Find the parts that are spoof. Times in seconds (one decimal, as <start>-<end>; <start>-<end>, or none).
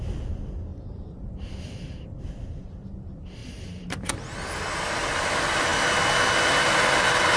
0.7-1.3; 3.4-4.1